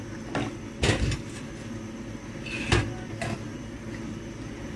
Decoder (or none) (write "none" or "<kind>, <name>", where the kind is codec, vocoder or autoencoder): none